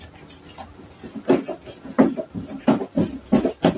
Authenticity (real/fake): real